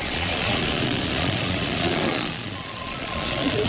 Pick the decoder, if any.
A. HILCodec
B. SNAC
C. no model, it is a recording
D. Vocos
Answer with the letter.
D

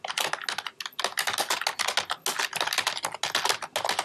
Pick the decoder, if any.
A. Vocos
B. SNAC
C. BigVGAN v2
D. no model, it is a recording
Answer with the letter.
D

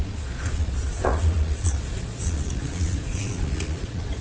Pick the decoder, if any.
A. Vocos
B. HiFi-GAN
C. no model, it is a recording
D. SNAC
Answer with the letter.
A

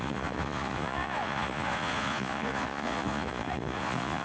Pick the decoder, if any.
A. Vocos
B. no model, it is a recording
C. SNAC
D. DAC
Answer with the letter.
A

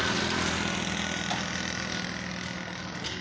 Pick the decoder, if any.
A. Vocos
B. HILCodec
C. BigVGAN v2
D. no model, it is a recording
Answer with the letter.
D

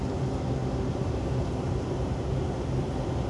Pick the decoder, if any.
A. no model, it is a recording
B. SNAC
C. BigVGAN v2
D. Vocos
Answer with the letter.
A